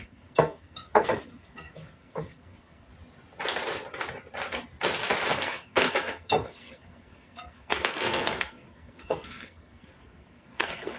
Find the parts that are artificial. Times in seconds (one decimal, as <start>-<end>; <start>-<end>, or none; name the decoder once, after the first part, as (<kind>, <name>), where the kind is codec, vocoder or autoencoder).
0.0-2.9 (codec, SNAC); 5.3-11.0